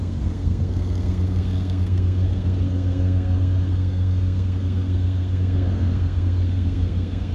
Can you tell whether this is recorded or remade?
remade